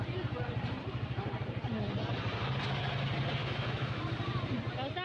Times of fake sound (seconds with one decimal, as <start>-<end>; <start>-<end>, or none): 3.4-4.0